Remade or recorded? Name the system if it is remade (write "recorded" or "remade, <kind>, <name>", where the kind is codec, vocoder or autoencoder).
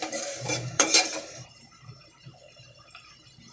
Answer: remade, vocoder, BigVGAN v2